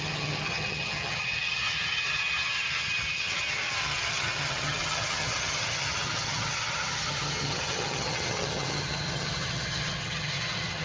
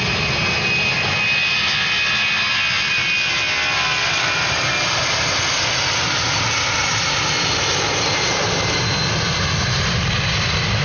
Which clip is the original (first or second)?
second